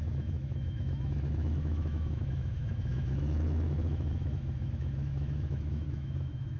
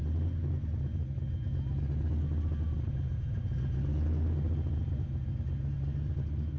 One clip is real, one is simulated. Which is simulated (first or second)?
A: first